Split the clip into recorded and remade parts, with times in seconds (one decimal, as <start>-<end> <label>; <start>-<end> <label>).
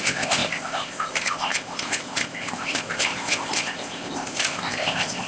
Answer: 0.0-5.3 remade